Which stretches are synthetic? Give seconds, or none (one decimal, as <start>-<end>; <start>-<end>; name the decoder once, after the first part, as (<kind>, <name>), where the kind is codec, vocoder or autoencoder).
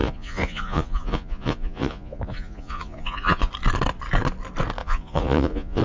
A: 0.0-3.5 (vocoder, Vocos); 4.8-5.8